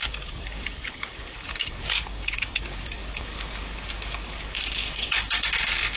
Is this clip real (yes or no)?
no